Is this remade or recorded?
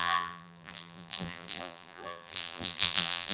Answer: remade